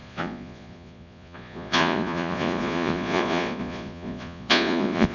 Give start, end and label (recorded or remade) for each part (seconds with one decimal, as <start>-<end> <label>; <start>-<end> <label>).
0.0-5.1 remade